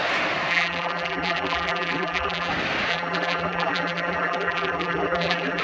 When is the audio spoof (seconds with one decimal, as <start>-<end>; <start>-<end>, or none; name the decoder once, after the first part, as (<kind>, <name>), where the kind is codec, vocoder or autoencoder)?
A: 0.5-2.5 (vocoder, BigVGAN v2); 2.9-5.6